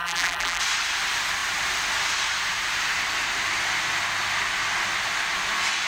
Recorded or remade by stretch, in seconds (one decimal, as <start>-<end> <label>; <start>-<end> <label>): 0.0-0.6 remade; 0.6-5.9 recorded

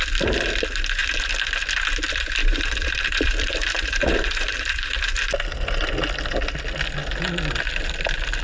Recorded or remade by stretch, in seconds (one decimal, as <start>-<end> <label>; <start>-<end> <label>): 0.0-2.4 recorded; 2.4-4.9 remade; 4.9-8.4 recorded